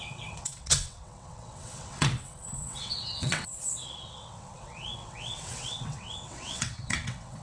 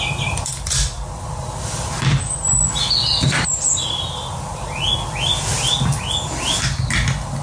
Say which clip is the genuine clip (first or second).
second